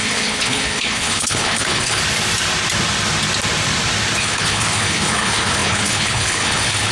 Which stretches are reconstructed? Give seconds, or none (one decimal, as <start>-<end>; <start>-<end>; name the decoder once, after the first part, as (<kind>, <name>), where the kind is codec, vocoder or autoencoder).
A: 0.0-2.0 (codec, HILCodec); 4.2-6.9